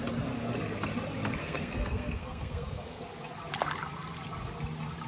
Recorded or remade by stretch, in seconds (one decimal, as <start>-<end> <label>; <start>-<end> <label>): 0.0-1.4 recorded; 1.4-3.0 remade; 3.0-5.1 recorded